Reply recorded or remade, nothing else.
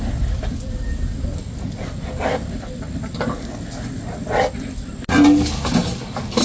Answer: recorded